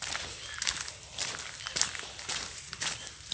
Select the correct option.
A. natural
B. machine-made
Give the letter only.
B